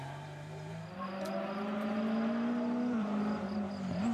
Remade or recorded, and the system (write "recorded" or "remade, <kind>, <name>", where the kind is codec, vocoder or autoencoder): recorded